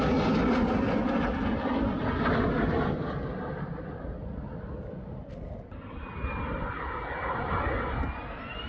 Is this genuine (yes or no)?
yes